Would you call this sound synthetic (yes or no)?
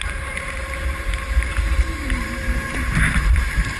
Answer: yes